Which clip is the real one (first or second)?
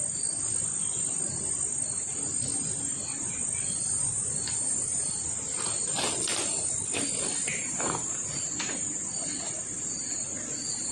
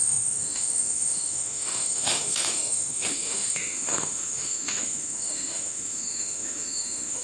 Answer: first